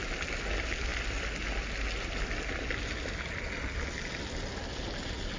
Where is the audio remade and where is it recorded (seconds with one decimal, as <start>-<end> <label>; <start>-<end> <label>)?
0.0-5.4 recorded